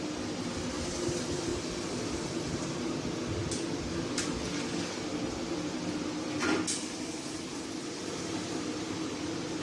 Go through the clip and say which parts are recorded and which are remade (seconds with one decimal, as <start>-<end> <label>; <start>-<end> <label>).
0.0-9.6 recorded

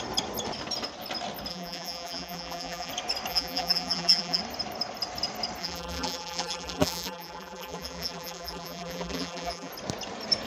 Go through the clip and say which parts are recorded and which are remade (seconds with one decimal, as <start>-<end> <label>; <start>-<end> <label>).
0.0-1.5 recorded; 1.5-2.9 remade; 2.9-3.3 recorded; 3.3-4.4 remade; 4.4-5.6 recorded; 5.6-9.7 remade; 9.7-10.5 recorded

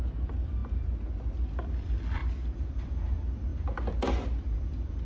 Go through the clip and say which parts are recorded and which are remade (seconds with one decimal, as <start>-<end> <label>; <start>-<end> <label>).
0.0-5.0 recorded